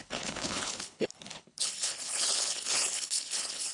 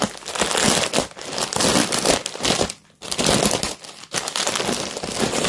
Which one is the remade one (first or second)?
first